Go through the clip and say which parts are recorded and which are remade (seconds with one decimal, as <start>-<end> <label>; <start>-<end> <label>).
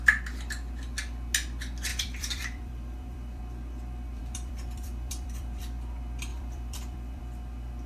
0.0-1.9 recorded; 1.9-3.4 remade; 3.4-4.2 recorded; 4.2-5.6 remade; 5.6-6.3 recorded; 6.3-7.2 remade; 7.2-7.9 recorded